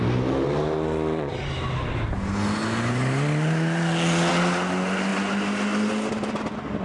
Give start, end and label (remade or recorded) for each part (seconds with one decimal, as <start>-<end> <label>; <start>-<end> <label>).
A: 0.0-6.8 recorded